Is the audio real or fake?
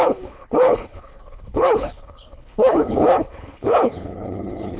fake